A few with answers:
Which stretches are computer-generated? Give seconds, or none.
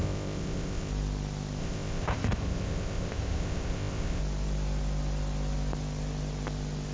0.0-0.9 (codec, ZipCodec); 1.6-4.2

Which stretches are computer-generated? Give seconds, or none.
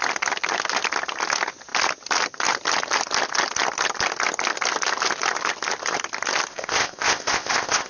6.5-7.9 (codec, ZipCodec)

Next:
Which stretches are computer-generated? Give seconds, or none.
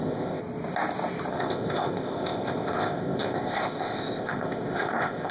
0.0-0.4 (codec, ZipCodec); 1.3-5.3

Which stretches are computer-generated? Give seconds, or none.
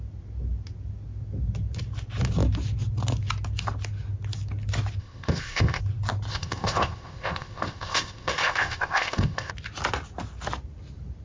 5.0-5.8 (codec, ZipCodec); 6.3-9.5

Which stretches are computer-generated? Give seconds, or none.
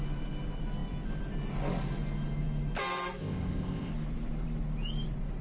3.2-3.9 (codec, ZipCodec)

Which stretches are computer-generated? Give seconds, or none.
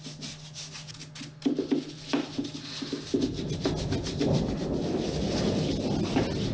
none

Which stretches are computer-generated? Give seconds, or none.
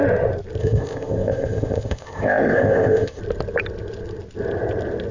0.6-3.2 (codec, ZipCodec)